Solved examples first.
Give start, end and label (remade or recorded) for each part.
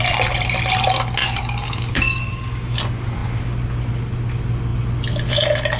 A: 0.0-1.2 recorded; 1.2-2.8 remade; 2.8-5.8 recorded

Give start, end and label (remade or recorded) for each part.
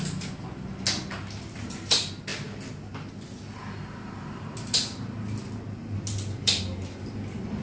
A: 0.0-7.6 recorded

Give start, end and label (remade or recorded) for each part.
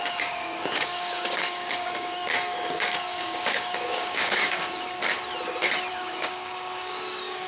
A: 0.0-5.0 remade; 5.0-5.9 recorded; 5.9-7.5 remade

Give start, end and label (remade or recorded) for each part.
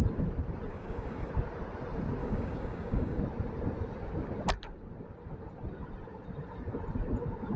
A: 0.0-0.7 recorded; 0.7-1.3 remade; 1.3-2.2 recorded; 2.2-3.2 remade; 3.2-7.6 recorded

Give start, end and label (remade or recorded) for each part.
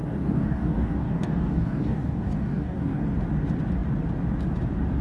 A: 0.0-3.0 remade; 3.0-5.0 recorded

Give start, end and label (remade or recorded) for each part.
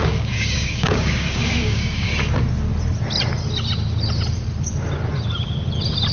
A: 0.0-2.1 remade; 2.1-6.1 recorded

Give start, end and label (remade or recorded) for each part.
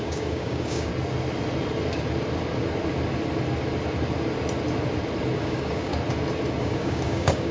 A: 0.0-0.9 remade; 0.9-5.4 recorded; 5.4-5.9 remade; 5.9-6.6 recorded; 6.6-7.5 remade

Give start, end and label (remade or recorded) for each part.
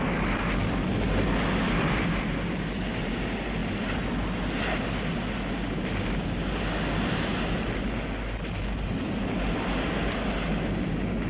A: 0.0-11.3 recorded